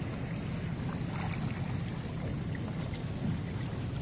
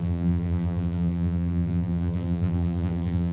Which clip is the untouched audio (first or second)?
first